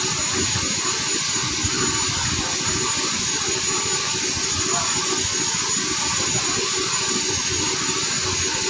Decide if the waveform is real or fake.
real